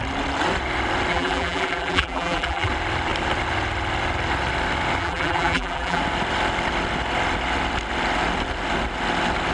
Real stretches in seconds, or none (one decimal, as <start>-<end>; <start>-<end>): 0.0-1.1; 2.7-5.0; 6.0-9.5